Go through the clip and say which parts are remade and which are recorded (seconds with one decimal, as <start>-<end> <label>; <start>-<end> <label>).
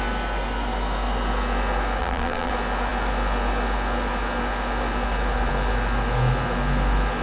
0.0-2.0 recorded; 2.0-2.5 remade; 2.5-7.2 recorded